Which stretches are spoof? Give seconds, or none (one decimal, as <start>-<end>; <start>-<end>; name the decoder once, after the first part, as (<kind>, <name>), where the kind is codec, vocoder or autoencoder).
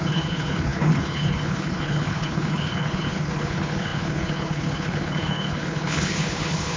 0.0-6.8 (codec, HILCodec)